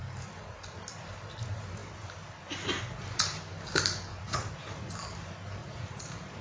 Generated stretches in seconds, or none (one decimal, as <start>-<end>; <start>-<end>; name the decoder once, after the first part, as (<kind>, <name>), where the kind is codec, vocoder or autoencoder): 4.1-4.9 (vocoder, Vocos); 5.6-6.4